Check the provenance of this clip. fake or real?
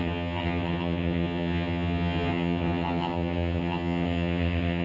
fake